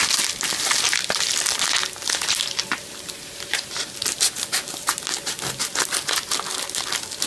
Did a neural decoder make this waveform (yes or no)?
no